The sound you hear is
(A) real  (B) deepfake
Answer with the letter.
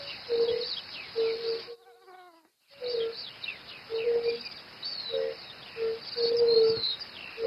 A